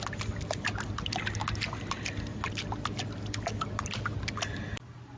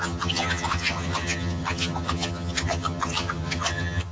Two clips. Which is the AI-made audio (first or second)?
second